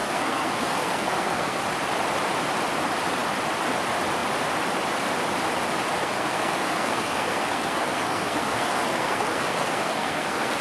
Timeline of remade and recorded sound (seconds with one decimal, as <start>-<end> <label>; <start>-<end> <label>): 0.0-1.6 remade; 1.6-6.0 recorded; 6.0-10.6 remade